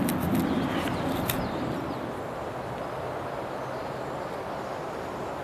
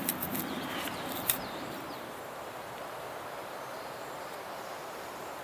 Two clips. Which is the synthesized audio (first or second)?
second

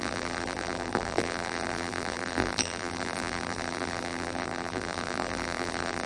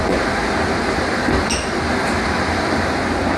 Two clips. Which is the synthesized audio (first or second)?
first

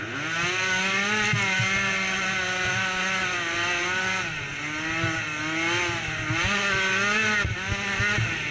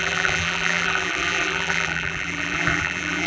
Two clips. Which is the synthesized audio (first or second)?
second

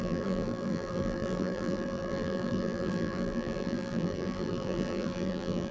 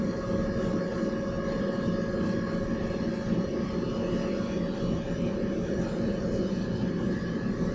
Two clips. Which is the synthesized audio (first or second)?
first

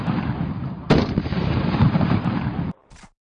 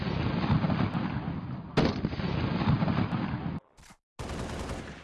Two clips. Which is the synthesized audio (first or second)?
first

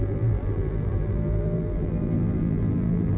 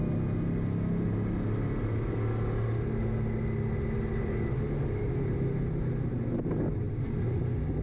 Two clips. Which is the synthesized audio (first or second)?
first